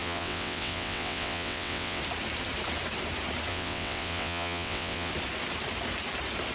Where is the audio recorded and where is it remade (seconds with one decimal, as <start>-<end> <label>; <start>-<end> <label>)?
0.0-2.0 remade; 2.0-3.5 recorded; 3.5-5.1 remade; 5.1-6.5 recorded